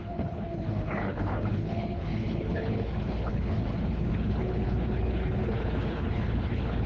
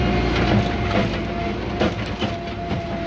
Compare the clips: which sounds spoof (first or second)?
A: first